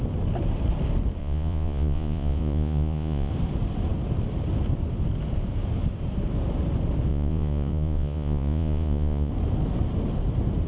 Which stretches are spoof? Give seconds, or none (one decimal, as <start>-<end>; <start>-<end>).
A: 1.2-3.3; 7.1-9.3